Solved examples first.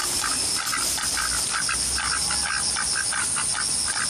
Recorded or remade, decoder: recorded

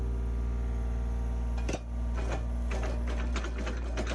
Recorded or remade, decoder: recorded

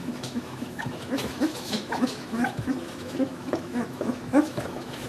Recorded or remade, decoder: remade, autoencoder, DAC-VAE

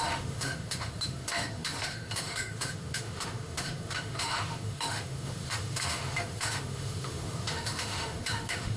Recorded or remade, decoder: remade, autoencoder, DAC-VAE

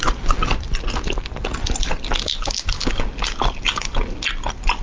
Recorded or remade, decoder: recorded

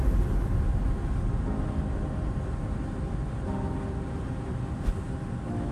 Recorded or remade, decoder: recorded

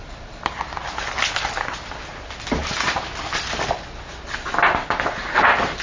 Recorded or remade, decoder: recorded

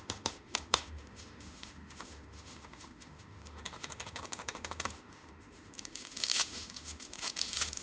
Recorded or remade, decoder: remade, autoencoder, DAC-VAE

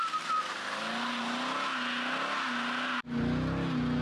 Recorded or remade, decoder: recorded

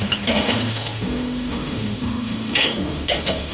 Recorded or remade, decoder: remade, autoencoder, DAC-VAE